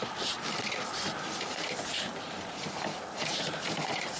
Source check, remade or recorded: recorded